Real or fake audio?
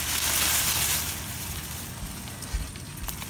real